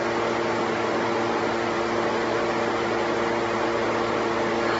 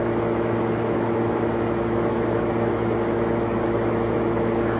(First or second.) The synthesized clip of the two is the second